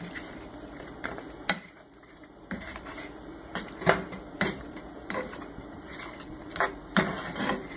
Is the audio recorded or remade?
remade